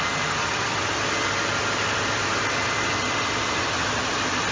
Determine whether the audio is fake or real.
real